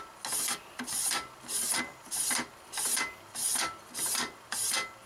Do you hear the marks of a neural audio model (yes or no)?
no